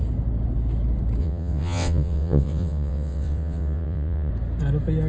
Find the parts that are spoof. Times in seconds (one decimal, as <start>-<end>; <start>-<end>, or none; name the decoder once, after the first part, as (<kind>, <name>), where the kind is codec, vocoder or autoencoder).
1.2-4.3 (vocoder, WaveNeXt)